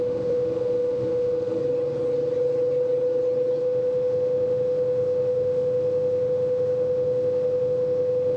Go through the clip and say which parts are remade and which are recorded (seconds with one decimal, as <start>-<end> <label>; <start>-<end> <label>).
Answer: 0.0-1.6 remade; 1.6-3.6 recorded; 3.6-8.4 remade